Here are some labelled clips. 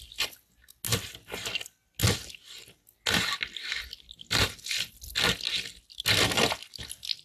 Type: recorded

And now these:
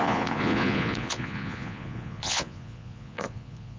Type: remade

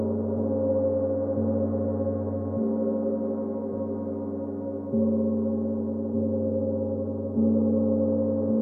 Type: recorded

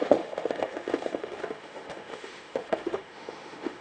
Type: remade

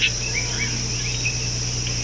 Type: recorded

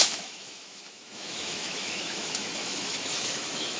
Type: remade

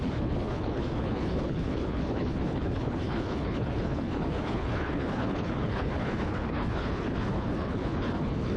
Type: remade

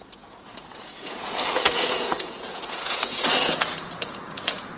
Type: remade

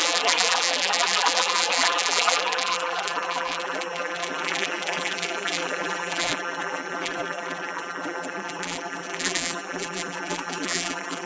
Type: remade